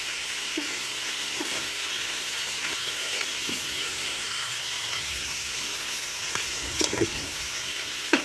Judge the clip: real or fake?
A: fake